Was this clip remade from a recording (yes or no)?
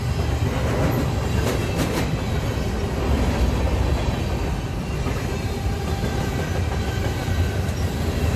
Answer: no